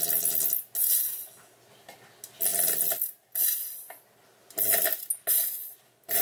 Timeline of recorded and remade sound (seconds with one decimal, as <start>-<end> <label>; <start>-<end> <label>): 0.0-6.2 recorded

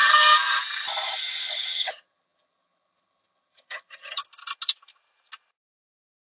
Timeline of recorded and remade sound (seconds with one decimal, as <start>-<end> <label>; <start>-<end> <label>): 0.0-1.5 recorded; 1.5-4.3 remade; 4.3-6.2 recorded

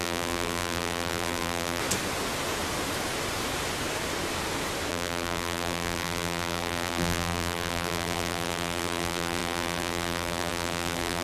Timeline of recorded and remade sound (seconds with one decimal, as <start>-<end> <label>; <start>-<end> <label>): 0.0-1.8 remade; 1.8-4.9 recorded; 4.9-11.2 remade

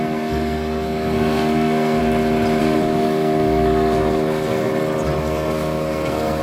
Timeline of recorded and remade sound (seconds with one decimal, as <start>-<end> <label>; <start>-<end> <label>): 0.0-2.0 remade; 2.0-2.6 recorded; 2.6-4.7 remade; 4.7-5.2 recorded; 5.2-6.4 remade